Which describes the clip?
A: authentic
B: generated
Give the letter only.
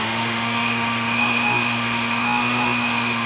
B